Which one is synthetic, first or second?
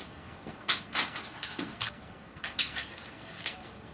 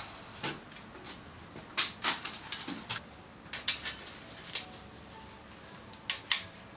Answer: first